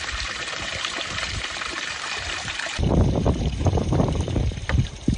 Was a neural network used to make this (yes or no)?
yes